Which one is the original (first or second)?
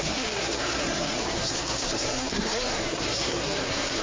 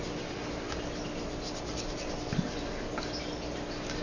second